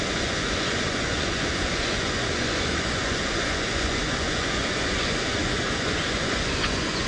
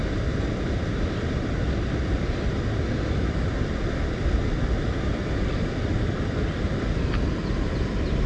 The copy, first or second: first